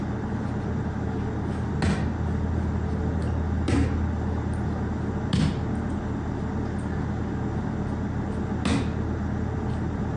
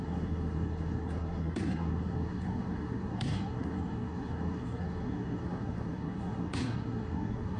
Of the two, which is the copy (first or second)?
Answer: second